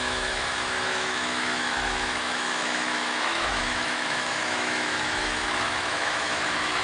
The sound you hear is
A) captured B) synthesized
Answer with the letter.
B